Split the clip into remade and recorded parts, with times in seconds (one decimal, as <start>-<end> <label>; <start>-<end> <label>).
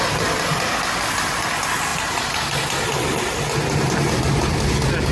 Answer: 0.0-5.1 recorded